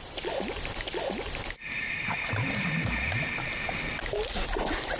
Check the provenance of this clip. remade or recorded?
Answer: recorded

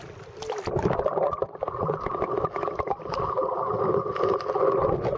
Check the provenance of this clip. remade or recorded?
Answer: recorded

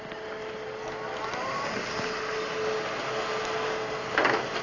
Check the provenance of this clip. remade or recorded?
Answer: recorded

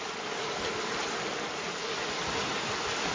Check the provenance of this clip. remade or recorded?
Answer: recorded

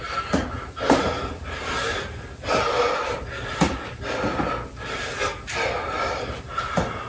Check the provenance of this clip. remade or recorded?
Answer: recorded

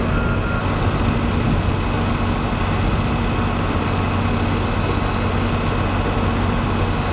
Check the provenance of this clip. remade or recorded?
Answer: recorded